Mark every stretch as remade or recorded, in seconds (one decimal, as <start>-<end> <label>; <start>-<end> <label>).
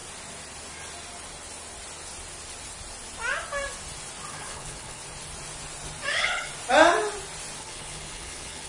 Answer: 0.0-4.3 recorded; 4.3-5.0 remade; 5.0-6.1 recorded; 6.1-6.5 remade; 6.5-7.6 recorded; 7.6-8.7 remade